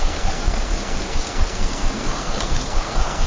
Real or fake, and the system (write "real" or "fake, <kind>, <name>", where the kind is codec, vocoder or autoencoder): fake, codec, SNAC